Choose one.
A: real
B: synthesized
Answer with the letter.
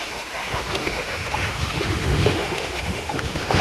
B